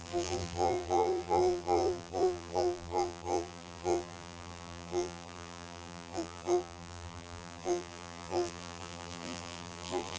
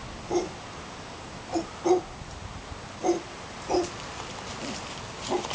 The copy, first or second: first